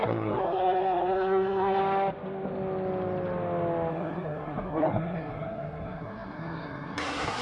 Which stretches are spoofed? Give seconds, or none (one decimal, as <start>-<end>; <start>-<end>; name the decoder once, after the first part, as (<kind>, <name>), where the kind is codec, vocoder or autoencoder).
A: 0.0-1.8 (codec, SNAC); 3.9-7.4